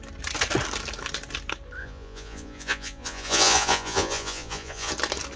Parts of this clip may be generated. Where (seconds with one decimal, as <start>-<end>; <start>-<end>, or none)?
1.8-4.9